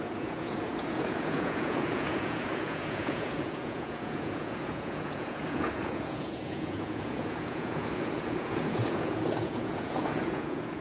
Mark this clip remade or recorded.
remade